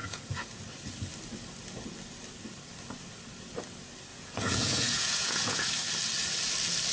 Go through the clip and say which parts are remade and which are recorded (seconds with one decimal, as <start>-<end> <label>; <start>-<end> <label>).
0.0-0.6 remade; 0.6-4.1 recorded; 4.1-5.7 remade; 5.7-6.9 recorded